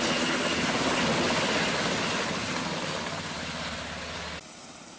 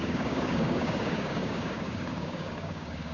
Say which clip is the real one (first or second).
first